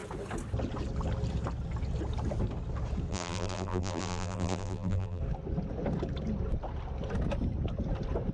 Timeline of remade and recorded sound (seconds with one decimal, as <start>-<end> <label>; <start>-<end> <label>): 0.0-3.1 recorded; 3.1-5.2 remade; 5.2-8.3 recorded